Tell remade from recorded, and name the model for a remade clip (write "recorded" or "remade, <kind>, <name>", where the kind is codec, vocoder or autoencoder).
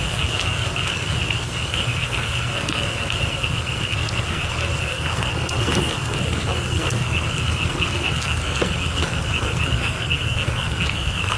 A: remade, codec, SNAC